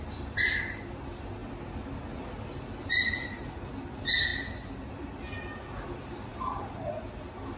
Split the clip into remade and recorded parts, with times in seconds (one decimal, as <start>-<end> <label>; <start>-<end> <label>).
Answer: 0.0-7.6 recorded